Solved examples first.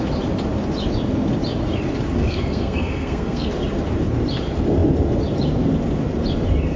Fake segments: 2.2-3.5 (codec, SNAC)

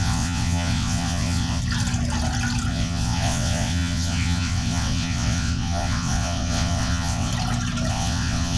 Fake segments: 0.0-1.6 (vocoder, WaveNeXt); 2.7-7.3; 7.9-8.6

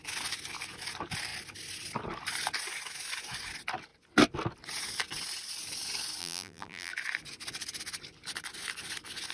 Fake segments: 6.2-6.9 (vocoder, BigVGAN v2)

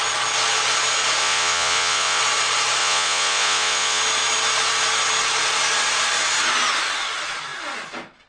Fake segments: 1.2-2.2 (vocoder, Vocos); 2.8-4.0

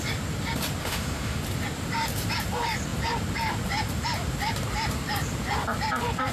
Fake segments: 0.8-1.4 (autoencoder, DAC-VAE)

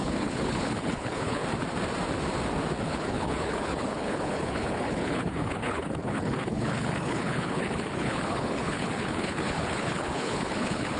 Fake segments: 0.0-1.4 (codec, HILCodec); 2.8-11.0